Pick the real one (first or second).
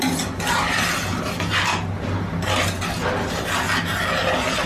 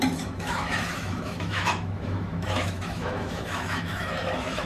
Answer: first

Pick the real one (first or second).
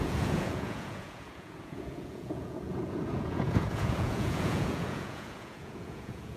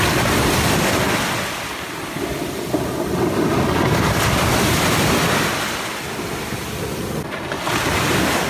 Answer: second